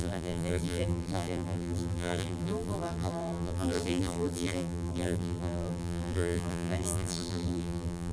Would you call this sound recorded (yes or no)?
no